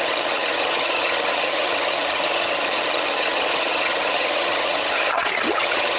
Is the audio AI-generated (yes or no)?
yes